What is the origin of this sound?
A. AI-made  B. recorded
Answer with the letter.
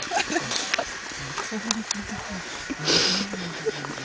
B